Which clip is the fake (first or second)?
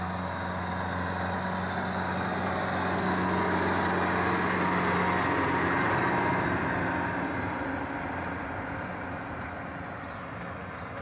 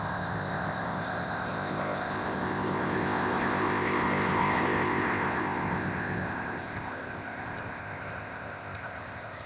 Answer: second